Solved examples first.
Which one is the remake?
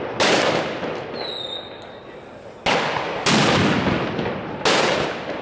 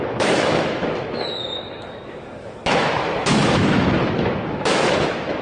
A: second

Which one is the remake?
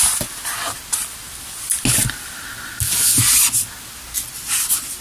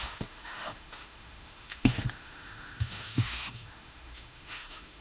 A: second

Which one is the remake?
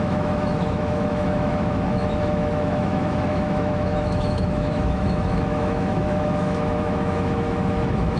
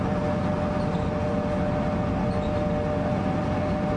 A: first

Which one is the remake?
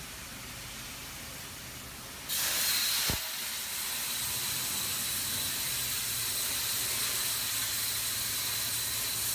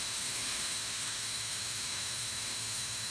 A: second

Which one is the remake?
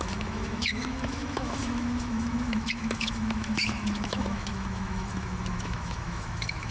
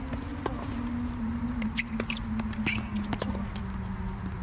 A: first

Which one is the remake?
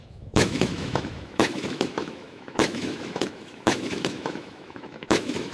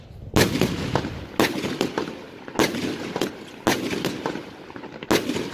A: first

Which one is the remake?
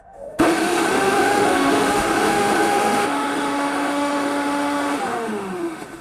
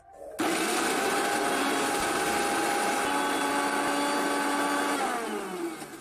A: first